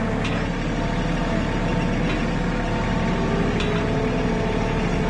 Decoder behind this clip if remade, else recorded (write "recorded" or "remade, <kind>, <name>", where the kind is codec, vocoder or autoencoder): recorded